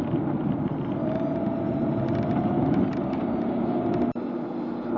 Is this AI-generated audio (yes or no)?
no